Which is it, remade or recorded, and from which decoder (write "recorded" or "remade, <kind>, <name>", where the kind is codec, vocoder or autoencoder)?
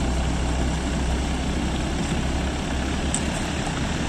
recorded